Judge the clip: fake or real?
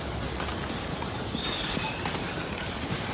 real